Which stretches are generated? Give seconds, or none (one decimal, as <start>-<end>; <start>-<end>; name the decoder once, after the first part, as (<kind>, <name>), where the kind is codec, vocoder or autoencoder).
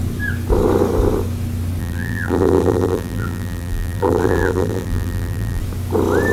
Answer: 1.8-5.6 (vocoder, BigVGAN v2)